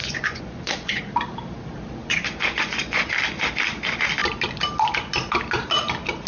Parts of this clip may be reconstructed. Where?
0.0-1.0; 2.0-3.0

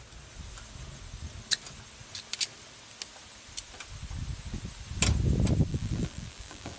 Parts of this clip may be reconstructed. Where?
5.7-6.8

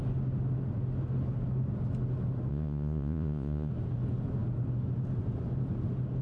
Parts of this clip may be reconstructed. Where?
2.5-3.7

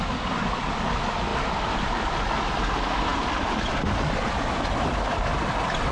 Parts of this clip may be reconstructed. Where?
1.3-2.2

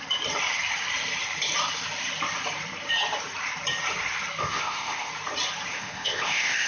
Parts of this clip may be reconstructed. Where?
4.4-5.1; 5.7-6.7

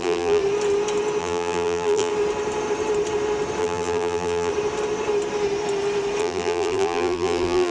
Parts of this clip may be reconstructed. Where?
0.0-0.4; 1.2-2.1; 3.6-4.5; 6.2-7.7